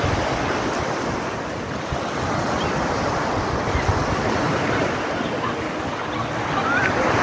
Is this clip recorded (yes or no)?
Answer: yes